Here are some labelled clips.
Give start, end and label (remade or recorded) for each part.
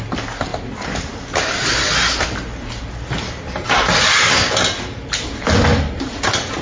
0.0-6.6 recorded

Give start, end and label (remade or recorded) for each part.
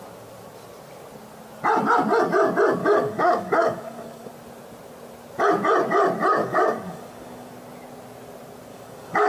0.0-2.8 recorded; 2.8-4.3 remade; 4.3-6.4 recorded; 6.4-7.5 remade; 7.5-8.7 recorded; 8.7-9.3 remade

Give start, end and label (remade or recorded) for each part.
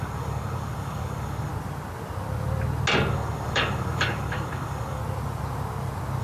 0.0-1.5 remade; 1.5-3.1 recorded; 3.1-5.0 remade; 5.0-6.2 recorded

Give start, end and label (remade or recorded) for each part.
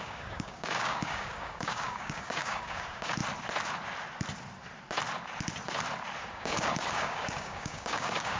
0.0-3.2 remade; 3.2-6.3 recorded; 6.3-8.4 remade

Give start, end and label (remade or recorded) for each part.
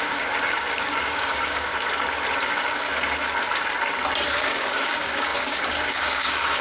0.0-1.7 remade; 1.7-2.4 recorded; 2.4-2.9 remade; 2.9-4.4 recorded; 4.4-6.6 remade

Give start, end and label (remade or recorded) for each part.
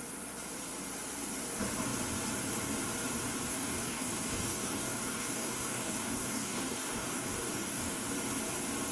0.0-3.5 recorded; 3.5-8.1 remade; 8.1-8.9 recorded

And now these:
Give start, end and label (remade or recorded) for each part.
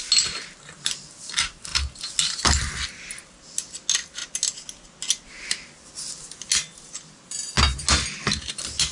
0.0-8.9 recorded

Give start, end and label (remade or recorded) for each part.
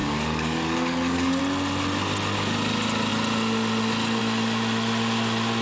0.0-1.4 remade; 1.4-5.6 recorded